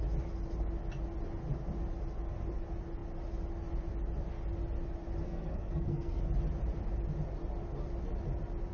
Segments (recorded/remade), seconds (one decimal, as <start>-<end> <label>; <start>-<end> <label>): 0.0-5.2 recorded; 5.2-6.2 remade; 6.2-8.7 recorded